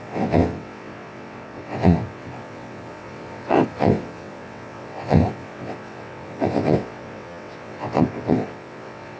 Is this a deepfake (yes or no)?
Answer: yes